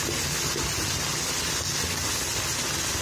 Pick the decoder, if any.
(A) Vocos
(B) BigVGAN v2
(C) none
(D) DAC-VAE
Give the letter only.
C